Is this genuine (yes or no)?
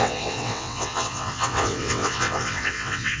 no